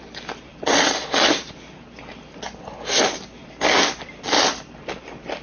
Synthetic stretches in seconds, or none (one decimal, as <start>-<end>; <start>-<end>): 0.5-1.5; 3.4-4.2